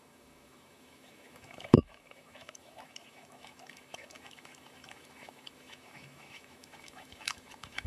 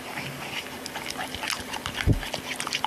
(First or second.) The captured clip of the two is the second